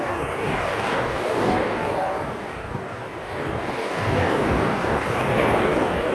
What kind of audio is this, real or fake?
fake